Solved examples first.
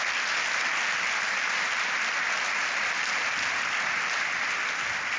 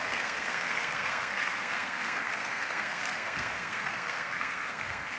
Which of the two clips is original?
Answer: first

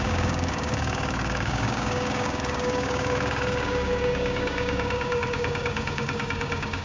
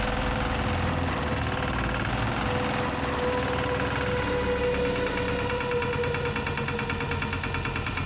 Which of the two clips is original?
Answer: second